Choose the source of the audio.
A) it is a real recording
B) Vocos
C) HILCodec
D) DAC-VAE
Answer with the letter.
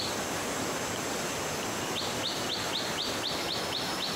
A